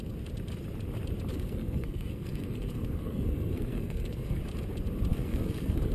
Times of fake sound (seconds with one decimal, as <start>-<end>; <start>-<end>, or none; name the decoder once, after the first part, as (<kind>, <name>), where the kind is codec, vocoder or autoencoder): 1.3-4.4 (codec, SNAC); 5.1-5.9